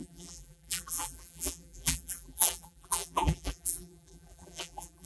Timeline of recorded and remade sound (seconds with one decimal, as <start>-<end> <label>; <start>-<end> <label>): 0.0-5.1 remade